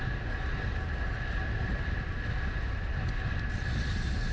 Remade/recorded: recorded